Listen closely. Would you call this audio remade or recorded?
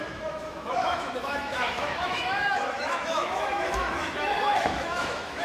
remade